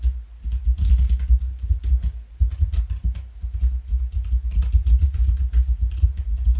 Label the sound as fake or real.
real